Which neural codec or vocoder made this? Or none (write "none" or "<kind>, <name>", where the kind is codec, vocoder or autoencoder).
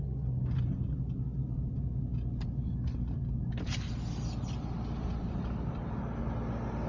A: none